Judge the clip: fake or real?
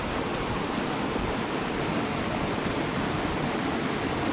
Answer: real